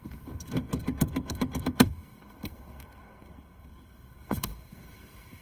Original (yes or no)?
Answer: no